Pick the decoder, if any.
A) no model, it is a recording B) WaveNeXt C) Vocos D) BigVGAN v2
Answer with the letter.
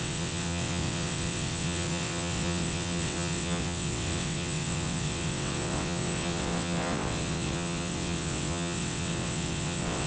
B